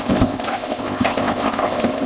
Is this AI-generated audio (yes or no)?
yes